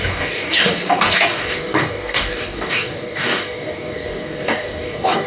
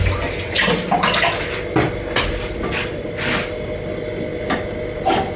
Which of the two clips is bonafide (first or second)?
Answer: second